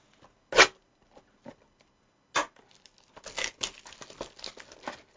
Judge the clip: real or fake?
real